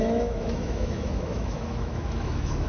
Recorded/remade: remade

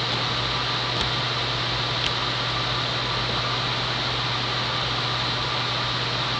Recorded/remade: recorded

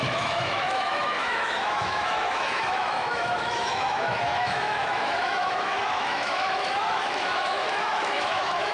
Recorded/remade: remade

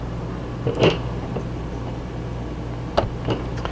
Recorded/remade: recorded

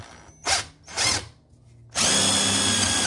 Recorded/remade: recorded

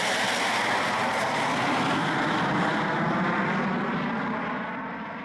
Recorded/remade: recorded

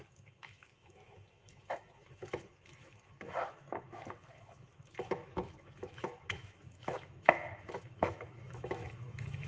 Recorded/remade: remade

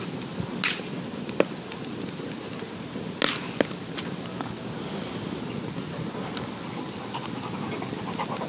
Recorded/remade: recorded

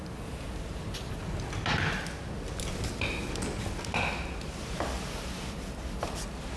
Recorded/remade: recorded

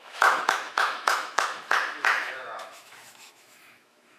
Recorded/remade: remade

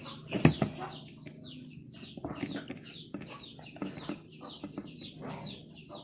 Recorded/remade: recorded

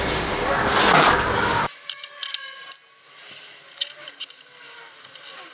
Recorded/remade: recorded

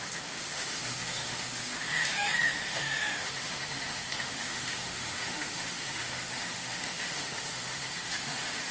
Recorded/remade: remade